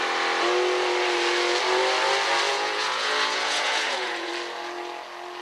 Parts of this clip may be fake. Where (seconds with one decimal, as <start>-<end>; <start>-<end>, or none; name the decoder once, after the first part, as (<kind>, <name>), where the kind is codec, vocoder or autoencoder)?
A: 2.5-4.3 (vocoder, Vocos)